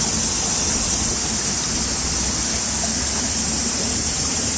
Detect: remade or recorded recorded